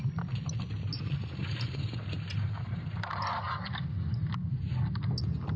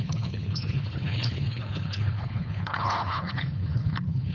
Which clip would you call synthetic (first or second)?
second